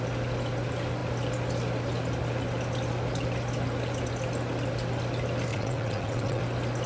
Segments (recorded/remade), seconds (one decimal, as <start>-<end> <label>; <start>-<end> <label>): 0.0-5.5 recorded; 5.5-6.4 remade; 6.4-6.9 recorded